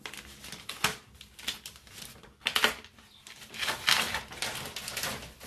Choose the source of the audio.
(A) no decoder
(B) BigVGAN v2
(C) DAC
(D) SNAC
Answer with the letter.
A